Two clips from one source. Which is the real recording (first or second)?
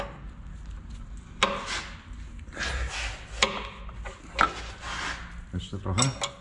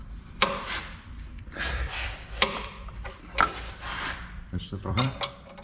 first